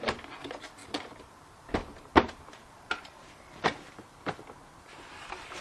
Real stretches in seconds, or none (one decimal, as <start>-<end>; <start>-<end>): 0.0-0.8; 1.4-1.9; 3.8-5.6